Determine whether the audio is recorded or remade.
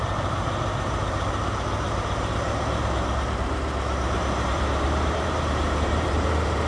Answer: remade